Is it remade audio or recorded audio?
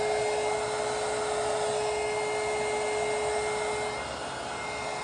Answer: recorded